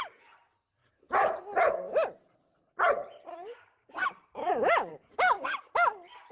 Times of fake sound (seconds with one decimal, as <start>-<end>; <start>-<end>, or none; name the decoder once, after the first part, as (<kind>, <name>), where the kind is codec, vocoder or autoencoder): 0.8-1.4 (vocoder, BigVGAN v2); 3.0-4.5; 4.9-5.4